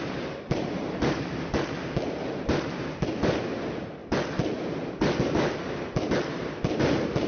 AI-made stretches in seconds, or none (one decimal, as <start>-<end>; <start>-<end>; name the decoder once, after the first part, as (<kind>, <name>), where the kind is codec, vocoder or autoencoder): 0.0-4.0 (vocoder, BigVGAN v2); 6.4-7.3